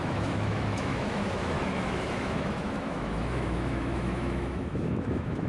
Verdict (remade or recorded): remade